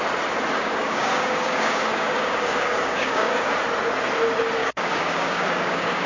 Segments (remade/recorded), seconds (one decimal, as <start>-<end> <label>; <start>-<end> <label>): 0.0-0.6 recorded; 0.6-3.5 remade; 3.5-4.6 recorded; 4.6-6.1 remade